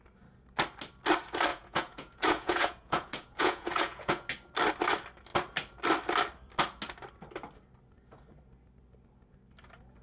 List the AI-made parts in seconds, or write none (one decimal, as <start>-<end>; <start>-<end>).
1.5-4.3